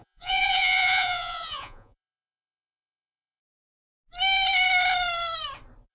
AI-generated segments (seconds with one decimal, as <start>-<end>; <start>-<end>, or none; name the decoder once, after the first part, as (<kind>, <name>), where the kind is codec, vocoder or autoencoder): 0.0-3.4 (vocoder, Vocos)